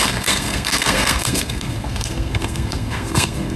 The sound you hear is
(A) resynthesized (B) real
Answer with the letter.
A